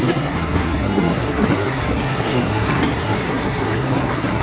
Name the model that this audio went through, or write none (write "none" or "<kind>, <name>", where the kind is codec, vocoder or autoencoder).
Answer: codec, SNAC